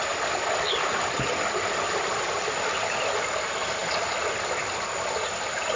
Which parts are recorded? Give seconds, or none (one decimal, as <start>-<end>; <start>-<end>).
0.0-5.8